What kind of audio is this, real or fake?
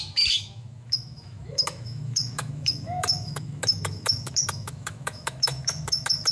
fake